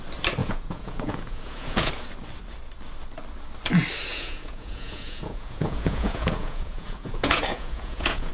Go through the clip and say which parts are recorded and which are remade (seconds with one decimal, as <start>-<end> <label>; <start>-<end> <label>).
0.0-0.4 recorded; 0.4-1.9 remade; 1.9-4.1 recorded; 4.1-8.3 remade